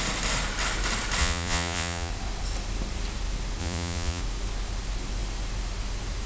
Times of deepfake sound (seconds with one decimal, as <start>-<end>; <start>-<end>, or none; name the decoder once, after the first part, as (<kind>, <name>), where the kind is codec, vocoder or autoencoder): 1.2-2.1 (vocoder, Vocos); 3.6-4.2